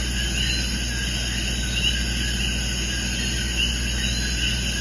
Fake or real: real